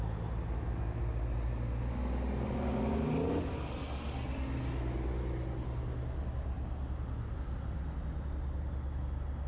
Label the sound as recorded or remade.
recorded